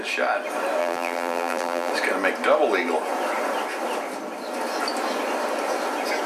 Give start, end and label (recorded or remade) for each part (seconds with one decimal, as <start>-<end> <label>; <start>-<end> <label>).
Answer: 0.0-0.8 recorded; 0.8-1.9 remade; 1.9-6.3 recorded